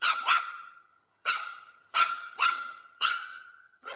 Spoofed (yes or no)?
yes